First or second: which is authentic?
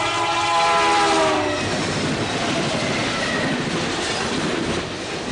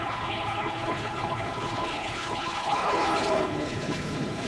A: first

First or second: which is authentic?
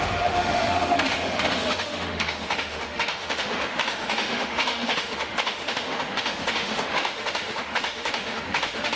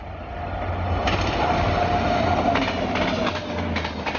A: second